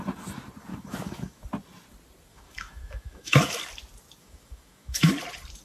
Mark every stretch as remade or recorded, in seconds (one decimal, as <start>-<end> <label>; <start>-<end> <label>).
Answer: 0.0-0.7 recorded; 0.7-1.4 remade; 1.4-2.3 recorded; 2.3-3.6 remade; 3.6-4.2 recorded; 4.2-5.1 remade; 5.1-5.6 recorded

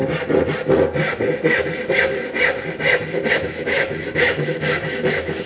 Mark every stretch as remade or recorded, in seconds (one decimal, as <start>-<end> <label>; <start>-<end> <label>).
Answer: 0.0-3.3 recorded; 3.3-5.5 remade

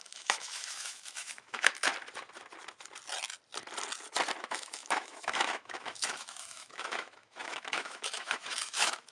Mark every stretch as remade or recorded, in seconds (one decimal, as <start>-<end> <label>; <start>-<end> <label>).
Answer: 0.0-1.9 remade; 1.9-4.4 recorded; 4.4-9.1 remade